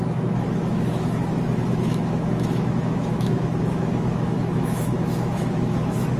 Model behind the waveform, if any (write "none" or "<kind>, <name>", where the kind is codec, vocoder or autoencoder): autoencoder, DAC-VAE